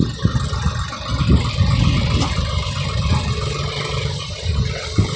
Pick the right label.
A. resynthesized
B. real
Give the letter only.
B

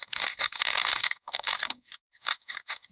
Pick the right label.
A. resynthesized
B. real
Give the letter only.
A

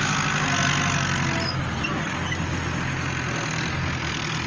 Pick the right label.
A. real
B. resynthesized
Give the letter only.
A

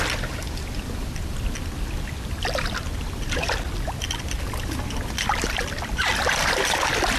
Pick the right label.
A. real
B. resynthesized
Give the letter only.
A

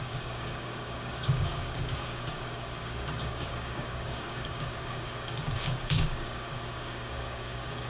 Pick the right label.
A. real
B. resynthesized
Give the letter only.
B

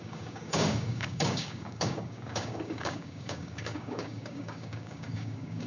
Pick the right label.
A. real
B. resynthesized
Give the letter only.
B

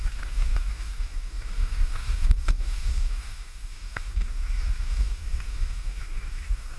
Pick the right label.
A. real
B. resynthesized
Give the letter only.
B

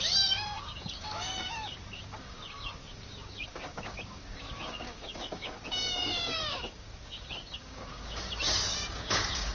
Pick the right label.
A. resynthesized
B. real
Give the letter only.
A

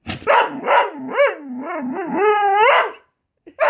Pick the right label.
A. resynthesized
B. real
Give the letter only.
B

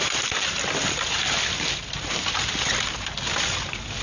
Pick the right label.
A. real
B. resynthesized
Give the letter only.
A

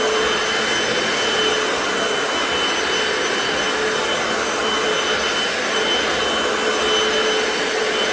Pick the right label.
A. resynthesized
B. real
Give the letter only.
B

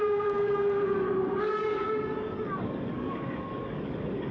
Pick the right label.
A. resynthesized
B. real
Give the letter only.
A